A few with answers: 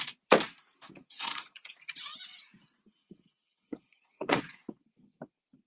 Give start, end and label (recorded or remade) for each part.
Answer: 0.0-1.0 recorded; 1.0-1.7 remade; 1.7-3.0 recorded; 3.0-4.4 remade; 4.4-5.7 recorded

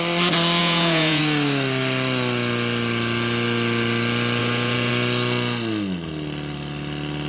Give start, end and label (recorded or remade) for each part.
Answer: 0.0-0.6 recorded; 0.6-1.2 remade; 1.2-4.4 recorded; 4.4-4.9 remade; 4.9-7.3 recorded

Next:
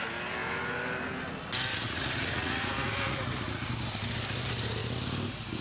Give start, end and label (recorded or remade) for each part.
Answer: 0.0-1.7 recorded; 1.7-3.7 remade; 3.7-5.6 recorded

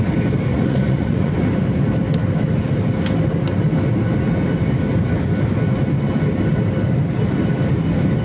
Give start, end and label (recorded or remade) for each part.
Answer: 0.0-0.5 recorded; 0.5-1.3 remade; 1.3-8.2 recorded

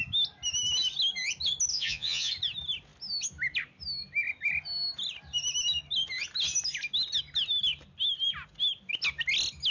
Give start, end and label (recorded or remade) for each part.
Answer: 0.0-1.7 recorded; 1.7-2.3 remade; 2.3-9.7 recorded